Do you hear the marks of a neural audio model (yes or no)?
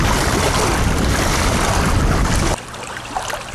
no